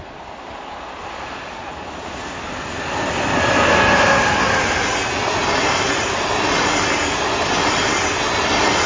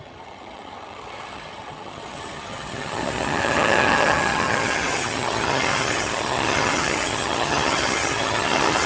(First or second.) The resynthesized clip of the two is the second